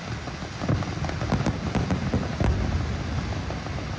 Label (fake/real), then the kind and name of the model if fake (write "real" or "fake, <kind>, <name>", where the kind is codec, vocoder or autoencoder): real